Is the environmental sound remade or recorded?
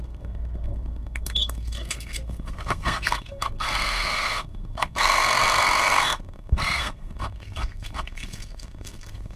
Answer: remade